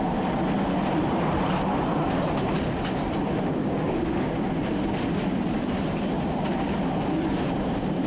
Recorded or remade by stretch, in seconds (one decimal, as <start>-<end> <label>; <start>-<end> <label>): 0.0-3.6 recorded; 3.6-4.3 remade; 4.3-8.1 recorded